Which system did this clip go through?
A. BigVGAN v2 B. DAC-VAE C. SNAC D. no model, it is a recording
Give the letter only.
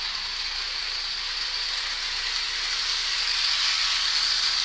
D